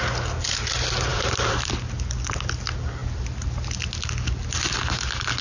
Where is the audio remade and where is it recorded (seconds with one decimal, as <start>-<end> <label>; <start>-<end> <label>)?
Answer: 0.0-1.1 recorded; 1.1-1.7 remade; 1.7-5.4 recorded